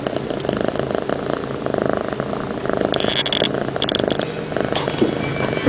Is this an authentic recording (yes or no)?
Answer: yes